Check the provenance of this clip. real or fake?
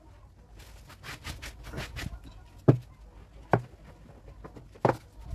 real